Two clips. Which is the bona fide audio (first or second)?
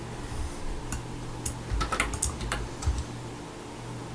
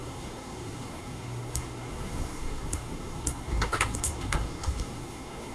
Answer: first